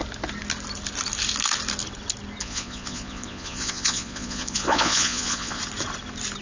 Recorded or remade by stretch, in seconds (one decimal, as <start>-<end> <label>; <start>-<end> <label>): 0.0-2.4 recorded; 2.4-5.6 remade; 5.6-6.4 recorded

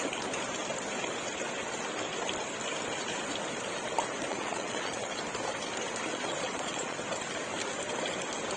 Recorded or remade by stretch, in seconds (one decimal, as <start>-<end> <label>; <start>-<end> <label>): 0.0-4.3 recorded; 4.3-5.2 remade; 5.2-6.1 recorded; 6.1-7.0 remade; 7.0-8.6 recorded

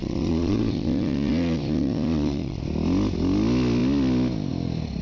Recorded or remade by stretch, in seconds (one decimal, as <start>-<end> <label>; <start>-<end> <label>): 0.0-2.6 remade; 2.6-5.0 recorded